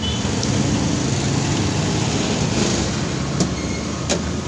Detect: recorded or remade recorded